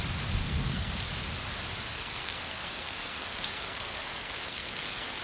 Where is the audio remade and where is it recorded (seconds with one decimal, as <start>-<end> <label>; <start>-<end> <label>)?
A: 0.0-0.4 recorded; 0.4-0.9 remade; 0.9-1.9 recorded; 1.9-5.2 remade